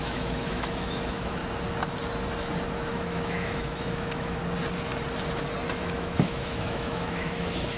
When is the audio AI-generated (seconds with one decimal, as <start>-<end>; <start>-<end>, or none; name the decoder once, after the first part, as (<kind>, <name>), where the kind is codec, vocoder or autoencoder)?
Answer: 0.0-1.4 (autoencoder, DAC-VAE); 2.9-4.4; 5.8-7.8